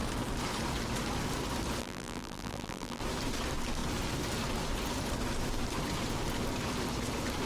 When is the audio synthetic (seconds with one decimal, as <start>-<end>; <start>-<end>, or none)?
1.8-3.0